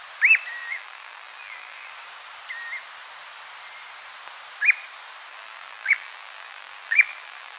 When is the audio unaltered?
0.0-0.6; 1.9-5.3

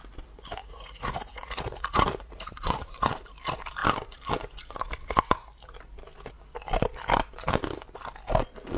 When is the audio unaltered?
0.0-0.6; 3.1-8.8